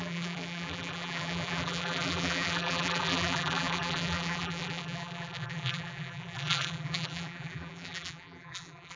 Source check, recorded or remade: remade